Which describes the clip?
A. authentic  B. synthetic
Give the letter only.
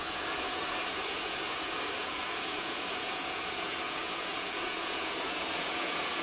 B